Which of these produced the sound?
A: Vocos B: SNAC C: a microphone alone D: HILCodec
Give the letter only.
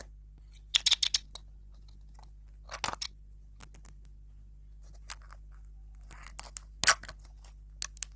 C